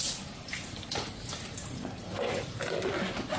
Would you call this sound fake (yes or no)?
no